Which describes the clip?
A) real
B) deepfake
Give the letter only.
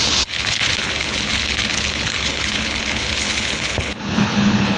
B